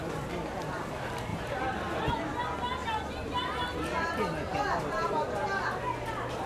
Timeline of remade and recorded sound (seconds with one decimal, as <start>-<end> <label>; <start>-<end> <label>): 0.0-1.3 recorded; 1.3-2.1 remade; 2.1-6.5 recorded